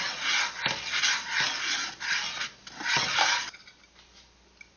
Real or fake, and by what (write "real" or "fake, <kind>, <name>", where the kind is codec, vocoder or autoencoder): real